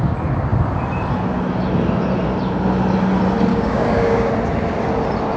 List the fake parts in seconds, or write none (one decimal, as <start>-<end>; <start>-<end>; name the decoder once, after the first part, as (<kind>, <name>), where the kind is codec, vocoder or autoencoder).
3.5-4.3 (codec, DAC)